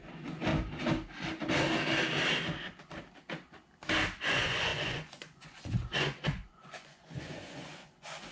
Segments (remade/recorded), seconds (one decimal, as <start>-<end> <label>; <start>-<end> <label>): 0.0-0.5 remade; 0.5-4.2 recorded; 4.2-8.3 remade